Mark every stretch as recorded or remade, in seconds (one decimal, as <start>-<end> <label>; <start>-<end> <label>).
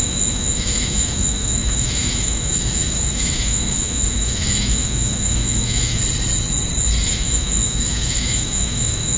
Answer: 0.0-6.0 remade; 6.0-7.1 recorded; 7.1-9.2 remade